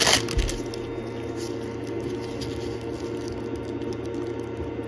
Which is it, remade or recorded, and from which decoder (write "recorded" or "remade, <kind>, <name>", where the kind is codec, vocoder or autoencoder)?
recorded